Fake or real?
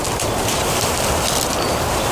real